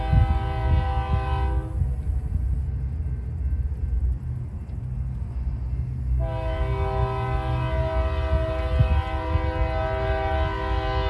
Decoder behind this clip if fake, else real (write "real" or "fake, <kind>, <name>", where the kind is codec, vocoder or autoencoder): real